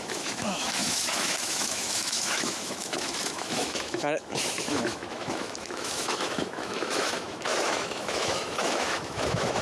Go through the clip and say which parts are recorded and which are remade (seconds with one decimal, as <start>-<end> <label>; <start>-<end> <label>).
0.0-9.6 remade